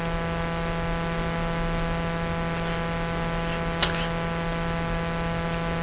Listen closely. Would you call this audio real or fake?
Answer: real